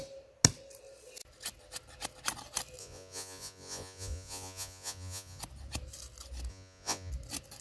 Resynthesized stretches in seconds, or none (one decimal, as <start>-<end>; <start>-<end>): 2.8-5.4; 6.5-7.1